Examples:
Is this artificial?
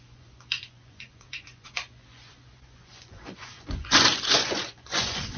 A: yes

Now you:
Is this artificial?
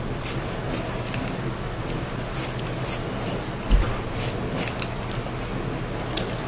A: no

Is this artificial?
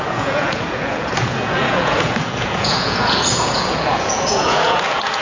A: yes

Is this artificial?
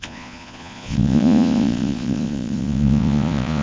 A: yes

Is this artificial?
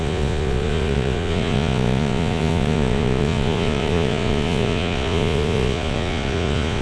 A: yes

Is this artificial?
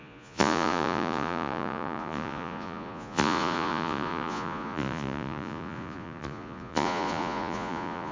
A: yes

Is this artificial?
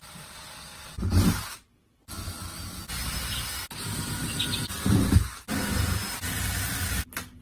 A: no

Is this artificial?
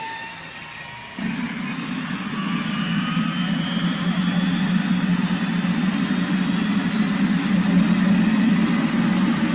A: no